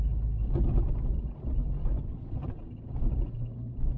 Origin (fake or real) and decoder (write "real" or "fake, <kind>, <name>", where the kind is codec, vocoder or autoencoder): real